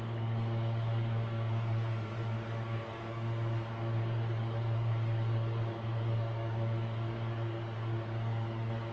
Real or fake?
fake